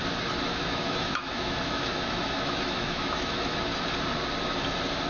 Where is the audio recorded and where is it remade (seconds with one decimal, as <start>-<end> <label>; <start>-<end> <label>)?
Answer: 0.0-0.5 recorded; 0.5-3.6 remade; 3.6-5.1 recorded